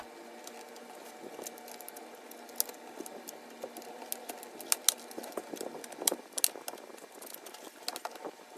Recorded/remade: recorded